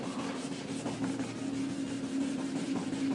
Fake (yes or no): no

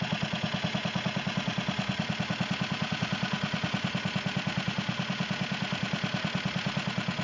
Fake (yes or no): yes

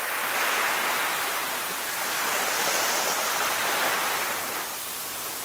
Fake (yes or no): no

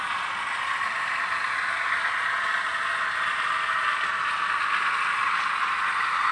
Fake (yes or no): no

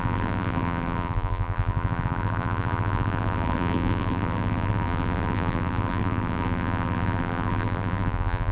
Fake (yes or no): yes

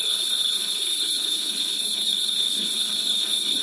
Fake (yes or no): yes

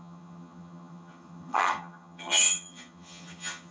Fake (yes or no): yes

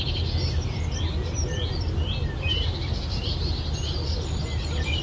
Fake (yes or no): no